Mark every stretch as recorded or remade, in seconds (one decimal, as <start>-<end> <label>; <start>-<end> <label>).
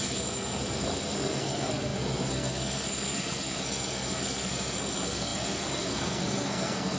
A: 0.0-7.0 remade